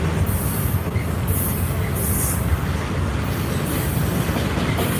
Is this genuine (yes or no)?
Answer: yes